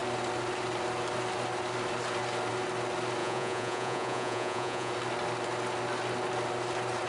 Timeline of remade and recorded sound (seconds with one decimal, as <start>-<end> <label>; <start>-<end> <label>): 0.0-3.2 recorded; 3.2-4.9 remade; 4.9-7.1 recorded